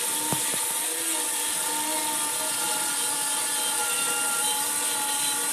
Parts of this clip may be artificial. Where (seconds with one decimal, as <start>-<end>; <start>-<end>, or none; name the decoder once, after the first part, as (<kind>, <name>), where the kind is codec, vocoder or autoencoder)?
none